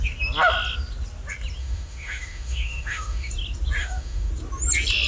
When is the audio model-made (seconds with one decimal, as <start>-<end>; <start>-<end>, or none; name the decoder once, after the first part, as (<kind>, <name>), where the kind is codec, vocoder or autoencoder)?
1.6-3.3 (autoencoder, DAC-VAE); 3.8-4.3